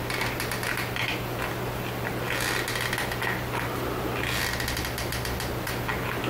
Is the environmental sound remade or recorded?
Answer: recorded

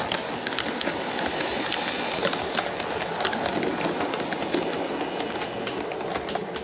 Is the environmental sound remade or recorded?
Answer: recorded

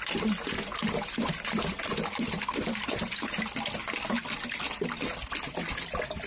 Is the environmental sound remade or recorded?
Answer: recorded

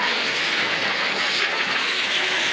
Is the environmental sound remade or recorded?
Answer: remade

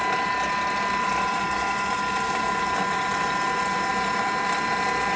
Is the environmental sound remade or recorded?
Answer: recorded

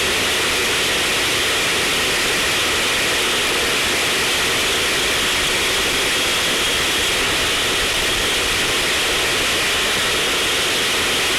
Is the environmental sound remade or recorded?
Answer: recorded